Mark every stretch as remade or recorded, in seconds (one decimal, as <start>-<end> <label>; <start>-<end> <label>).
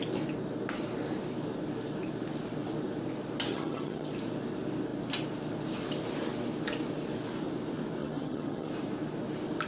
0.0-3.5 recorded; 3.5-4.1 remade; 4.1-8.0 recorded; 8.0-8.7 remade; 8.7-9.7 recorded